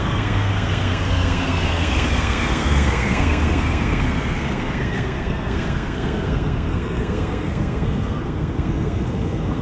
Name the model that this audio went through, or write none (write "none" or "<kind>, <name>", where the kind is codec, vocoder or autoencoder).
codec, SNAC